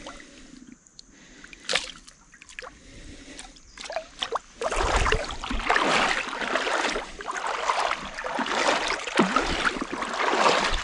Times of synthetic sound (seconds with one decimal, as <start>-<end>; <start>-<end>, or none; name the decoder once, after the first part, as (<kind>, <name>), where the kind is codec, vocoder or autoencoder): none